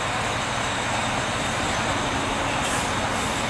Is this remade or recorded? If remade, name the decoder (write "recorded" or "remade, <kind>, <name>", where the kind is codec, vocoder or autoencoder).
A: recorded